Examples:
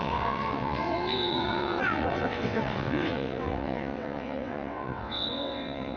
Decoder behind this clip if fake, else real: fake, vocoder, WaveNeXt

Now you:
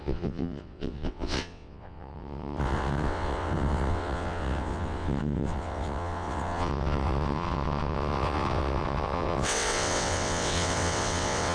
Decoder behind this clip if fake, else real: fake, vocoder, WaveNeXt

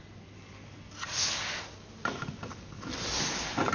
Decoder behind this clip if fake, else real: real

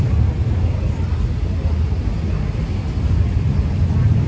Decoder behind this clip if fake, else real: real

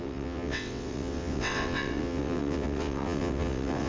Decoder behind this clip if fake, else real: fake, vocoder, WaveNeXt